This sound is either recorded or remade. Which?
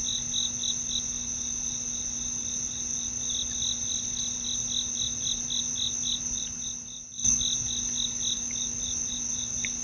recorded